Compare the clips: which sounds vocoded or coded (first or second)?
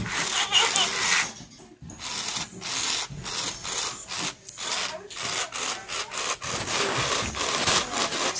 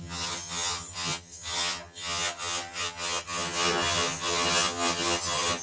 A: second